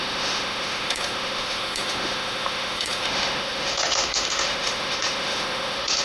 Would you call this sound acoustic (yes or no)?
no